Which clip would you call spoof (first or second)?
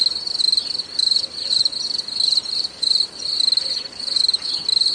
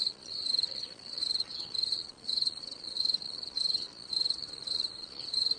second